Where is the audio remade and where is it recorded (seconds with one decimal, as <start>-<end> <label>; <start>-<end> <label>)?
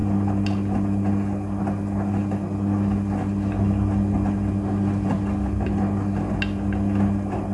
0.0-7.5 recorded